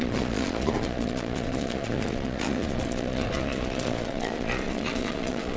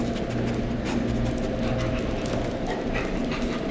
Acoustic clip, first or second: second